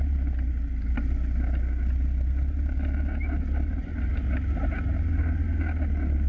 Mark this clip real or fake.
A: real